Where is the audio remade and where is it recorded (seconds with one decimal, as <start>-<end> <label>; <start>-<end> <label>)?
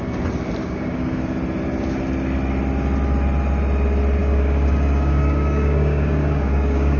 0.0-0.6 recorded; 0.6-1.2 remade; 1.2-4.2 recorded; 4.2-7.0 remade